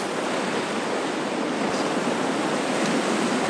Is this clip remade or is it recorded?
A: recorded